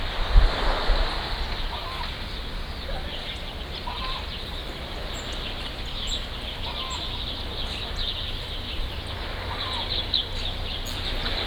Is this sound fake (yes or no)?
no